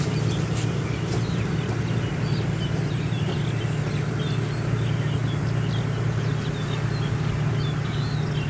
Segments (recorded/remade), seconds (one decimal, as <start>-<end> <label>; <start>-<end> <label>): 0.0-8.5 recorded